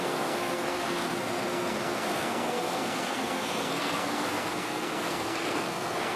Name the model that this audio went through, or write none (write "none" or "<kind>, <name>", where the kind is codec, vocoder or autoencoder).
codec, SNAC